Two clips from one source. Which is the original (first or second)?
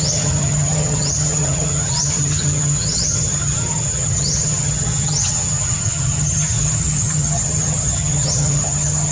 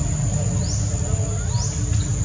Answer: second